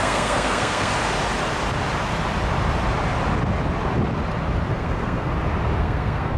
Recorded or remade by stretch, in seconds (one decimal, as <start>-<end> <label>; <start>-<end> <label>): 0.0-0.9 remade; 0.9-4.7 recorded; 4.7-5.3 remade; 5.3-5.8 recorded; 5.8-6.4 remade